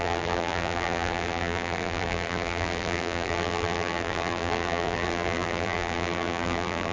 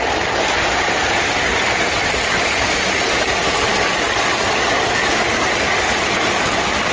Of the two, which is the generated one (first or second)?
first